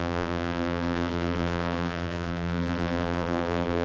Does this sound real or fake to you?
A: fake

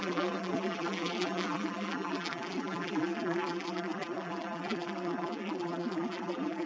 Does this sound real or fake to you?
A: fake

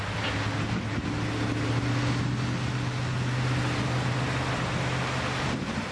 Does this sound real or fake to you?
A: real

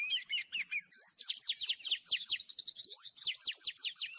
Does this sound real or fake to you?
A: real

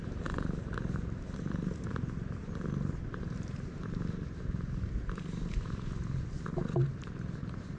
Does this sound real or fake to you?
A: fake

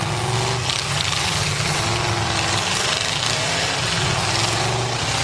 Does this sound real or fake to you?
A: real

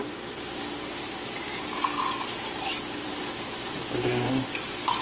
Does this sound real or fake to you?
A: fake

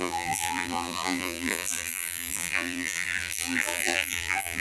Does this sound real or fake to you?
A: fake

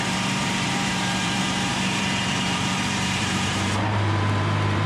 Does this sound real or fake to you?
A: fake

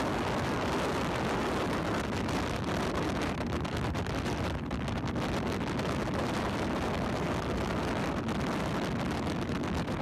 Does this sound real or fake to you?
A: real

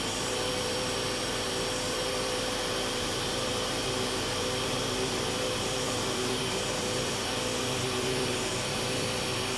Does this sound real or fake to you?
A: fake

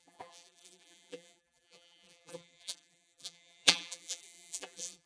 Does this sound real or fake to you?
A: fake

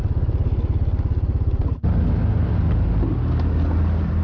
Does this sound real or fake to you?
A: real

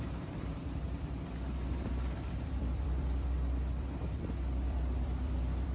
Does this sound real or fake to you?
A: fake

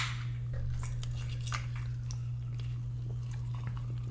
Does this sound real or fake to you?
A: real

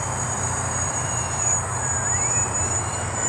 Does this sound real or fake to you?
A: fake